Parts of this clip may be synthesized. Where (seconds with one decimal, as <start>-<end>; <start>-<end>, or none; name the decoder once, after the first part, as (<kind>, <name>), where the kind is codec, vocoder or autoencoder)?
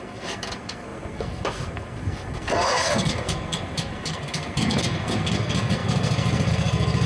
0.0-7.1 (codec, SNAC)